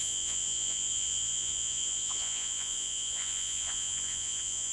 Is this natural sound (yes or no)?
no